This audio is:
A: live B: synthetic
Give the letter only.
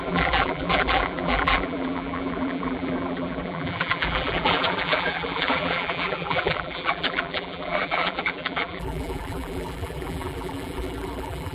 B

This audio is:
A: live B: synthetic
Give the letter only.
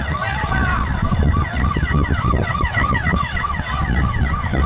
B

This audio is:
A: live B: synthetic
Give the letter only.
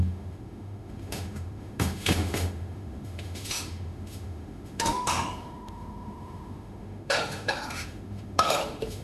B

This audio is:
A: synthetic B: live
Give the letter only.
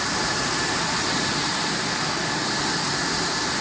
B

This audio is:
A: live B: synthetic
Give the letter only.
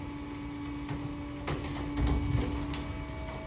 A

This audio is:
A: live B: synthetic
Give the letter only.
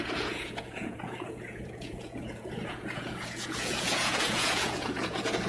B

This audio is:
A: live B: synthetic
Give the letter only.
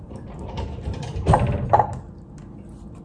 A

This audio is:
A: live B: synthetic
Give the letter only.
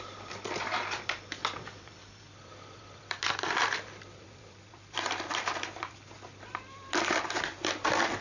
B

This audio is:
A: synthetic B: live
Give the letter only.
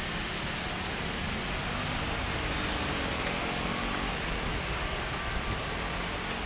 B